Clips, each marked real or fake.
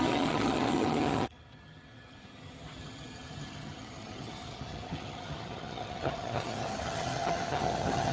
fake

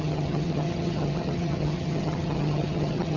fake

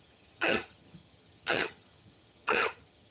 fake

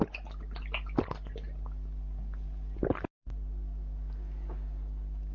real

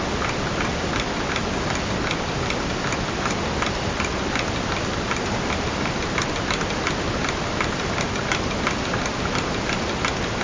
real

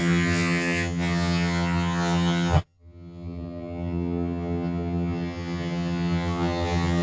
fake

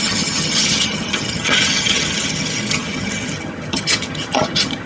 fake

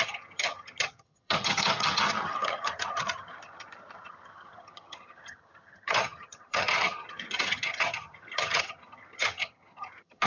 fake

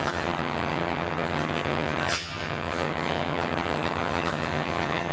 fake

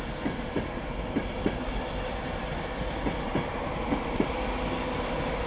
real